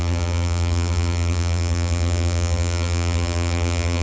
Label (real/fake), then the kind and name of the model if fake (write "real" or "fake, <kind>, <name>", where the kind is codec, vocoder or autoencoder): fake, vocoder, BigVGAN v2